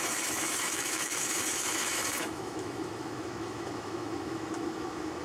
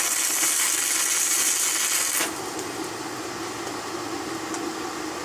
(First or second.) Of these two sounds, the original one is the second